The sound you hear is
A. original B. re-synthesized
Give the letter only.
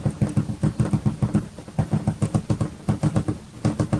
A